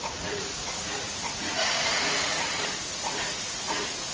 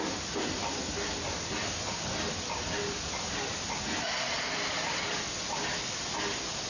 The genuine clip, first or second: second